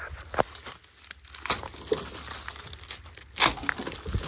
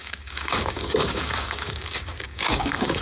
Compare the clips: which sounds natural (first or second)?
first